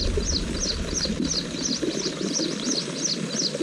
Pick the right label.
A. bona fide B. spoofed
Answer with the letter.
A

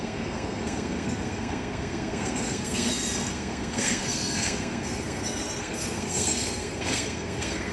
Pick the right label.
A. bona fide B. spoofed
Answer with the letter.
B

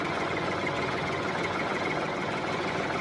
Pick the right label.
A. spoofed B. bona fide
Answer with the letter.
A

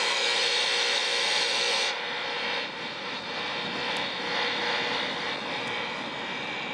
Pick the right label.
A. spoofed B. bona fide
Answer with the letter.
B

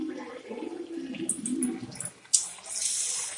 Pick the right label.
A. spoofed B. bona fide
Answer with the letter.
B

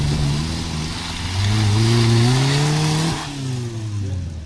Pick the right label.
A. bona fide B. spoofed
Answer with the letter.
A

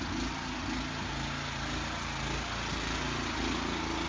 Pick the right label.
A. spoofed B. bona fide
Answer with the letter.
B